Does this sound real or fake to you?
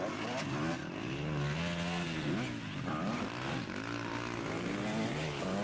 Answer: real